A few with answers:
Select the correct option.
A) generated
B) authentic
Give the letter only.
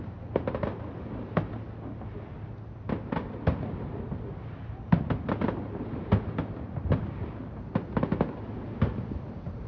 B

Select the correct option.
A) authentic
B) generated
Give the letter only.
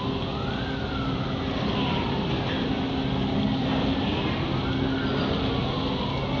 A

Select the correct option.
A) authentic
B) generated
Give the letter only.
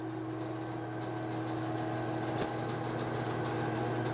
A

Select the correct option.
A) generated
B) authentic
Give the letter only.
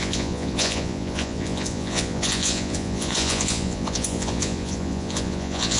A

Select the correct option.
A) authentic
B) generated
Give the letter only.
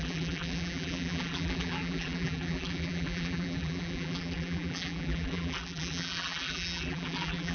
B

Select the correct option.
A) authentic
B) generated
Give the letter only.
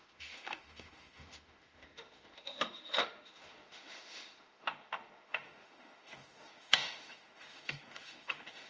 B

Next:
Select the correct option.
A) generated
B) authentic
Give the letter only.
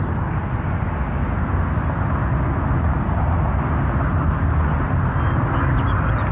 B